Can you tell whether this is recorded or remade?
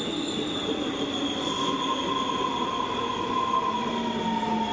recorded